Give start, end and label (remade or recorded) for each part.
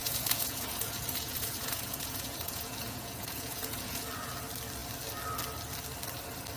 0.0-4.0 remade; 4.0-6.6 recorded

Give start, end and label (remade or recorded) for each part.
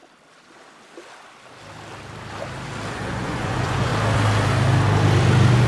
0.0-2.9 recorded; 2.9-3.9 remade; 3.9-5.7 recorded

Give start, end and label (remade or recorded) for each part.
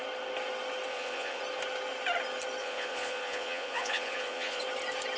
0.0-0.9 recorded; 0.9-1.4 remade; 1.4-2.6 recorded; 2.6-4.6 remade; 4.6-5.2 recorded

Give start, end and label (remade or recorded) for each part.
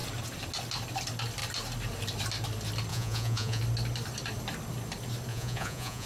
0.0-2.9 recorded; 2.9-3.6 remade; 3.6-5.3 recorded; 5.3-6.1 remade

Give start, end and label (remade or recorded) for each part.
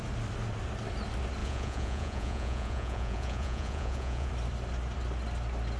0.0-1.4 recorded; 1.4-4.3 remade; 4.3-5.8 recorded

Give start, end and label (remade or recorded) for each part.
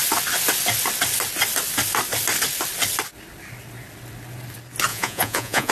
0.0-4.9 recorded; 4.9-5.7 remade